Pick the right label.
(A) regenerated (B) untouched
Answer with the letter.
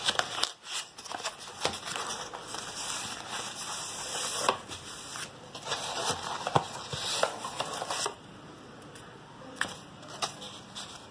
B